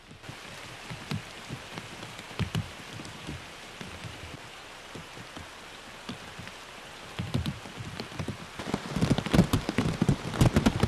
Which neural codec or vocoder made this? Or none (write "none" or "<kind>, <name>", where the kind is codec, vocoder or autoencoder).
vocoder, BigVGAN v2